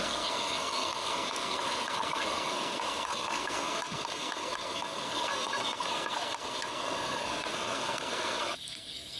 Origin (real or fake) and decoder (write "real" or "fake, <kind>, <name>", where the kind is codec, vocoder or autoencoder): fake, codec, SNAC